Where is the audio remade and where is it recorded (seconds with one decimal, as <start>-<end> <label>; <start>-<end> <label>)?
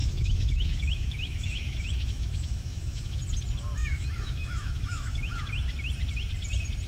0.0-3.2 remade; 3.2-3.8 recorded; 3.8-5.5 remade; 5.5-6.9 recorded